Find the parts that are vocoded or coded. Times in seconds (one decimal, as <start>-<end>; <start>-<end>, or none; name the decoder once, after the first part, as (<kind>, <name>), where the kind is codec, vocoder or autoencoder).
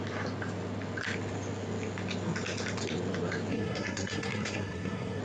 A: 3.5-5.2 (codec, SNAC)